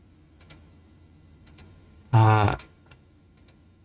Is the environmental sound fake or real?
fake